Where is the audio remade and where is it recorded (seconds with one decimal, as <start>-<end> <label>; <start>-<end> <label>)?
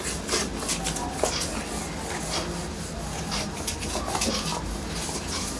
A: 0.0-5.6 recorded